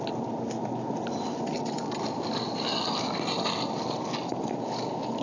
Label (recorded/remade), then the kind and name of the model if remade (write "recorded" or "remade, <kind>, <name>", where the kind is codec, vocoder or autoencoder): recorded